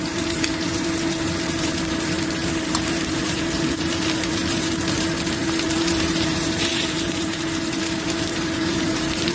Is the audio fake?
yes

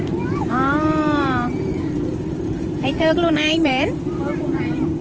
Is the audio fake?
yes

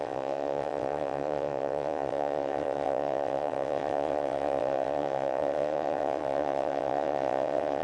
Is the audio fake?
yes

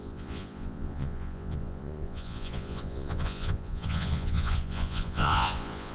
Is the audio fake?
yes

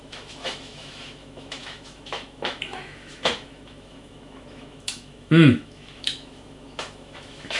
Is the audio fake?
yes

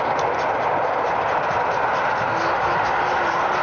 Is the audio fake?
no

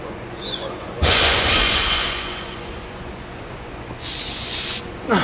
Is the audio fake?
yes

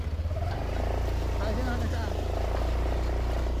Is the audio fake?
no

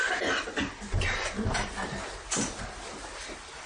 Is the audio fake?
no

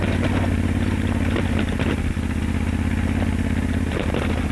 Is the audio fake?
no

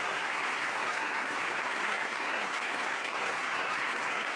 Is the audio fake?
yes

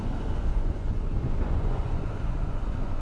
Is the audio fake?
yes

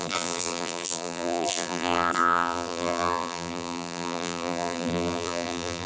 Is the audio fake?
yes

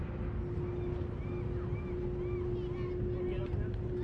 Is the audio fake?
no